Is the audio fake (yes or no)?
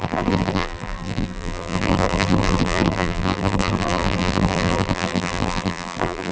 yes